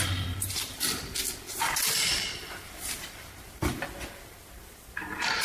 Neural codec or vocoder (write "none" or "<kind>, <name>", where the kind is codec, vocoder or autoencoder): none